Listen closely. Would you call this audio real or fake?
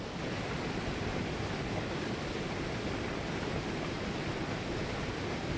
real